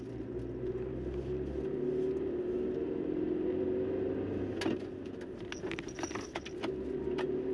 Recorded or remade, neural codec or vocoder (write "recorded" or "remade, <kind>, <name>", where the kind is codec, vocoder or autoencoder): recorded